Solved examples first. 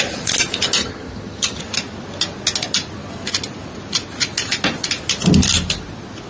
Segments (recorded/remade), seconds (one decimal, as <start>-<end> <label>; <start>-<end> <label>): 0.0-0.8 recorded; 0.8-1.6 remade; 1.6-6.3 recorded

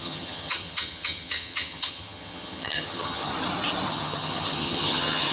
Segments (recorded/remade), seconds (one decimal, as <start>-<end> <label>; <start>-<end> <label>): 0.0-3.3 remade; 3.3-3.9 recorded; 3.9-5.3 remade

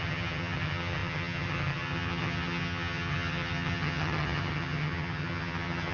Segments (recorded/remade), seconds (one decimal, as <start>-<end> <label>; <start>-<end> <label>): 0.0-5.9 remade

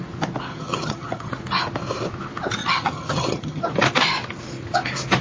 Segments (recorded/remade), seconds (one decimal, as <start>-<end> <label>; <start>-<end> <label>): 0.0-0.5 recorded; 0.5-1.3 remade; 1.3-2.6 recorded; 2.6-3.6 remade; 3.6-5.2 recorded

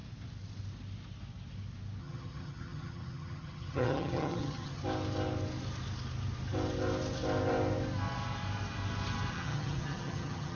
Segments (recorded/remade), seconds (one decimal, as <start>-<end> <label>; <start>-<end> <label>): 0.0-2.0 recorded; 2.0-4.8 remade; 4.8-9.3 recorded; 9.3-10.6 remade

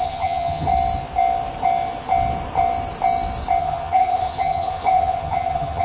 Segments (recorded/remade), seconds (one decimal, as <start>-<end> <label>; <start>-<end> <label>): 0.0-0.7 remade; 0.7-3.6 recorded; 3.6-5.8 remade